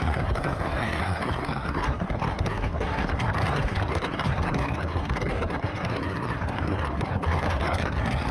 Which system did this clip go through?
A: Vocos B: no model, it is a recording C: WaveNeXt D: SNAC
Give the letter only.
D